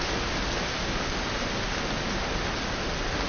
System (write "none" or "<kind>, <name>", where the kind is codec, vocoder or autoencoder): none